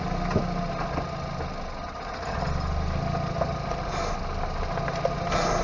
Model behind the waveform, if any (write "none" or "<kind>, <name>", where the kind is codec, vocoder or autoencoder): none